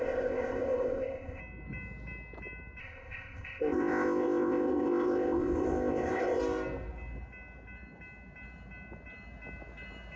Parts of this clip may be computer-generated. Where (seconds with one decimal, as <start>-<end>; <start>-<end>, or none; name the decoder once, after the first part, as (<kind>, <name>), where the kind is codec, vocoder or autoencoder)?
0.0-1.4 (codec, ZipCodec); 2.8-6.4